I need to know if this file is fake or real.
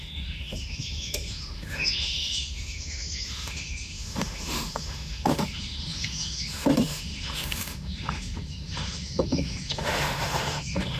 fake